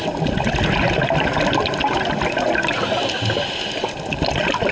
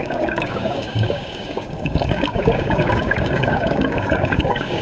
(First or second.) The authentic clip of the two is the first